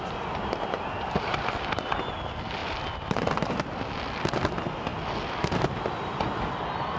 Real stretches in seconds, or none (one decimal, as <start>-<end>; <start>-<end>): 0.0-7.0